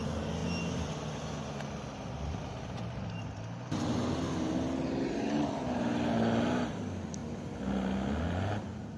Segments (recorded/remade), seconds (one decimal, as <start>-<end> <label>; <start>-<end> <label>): 0.0-9.0 recorded